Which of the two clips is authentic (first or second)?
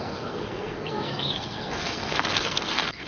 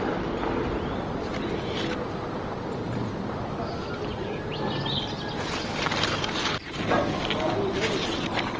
second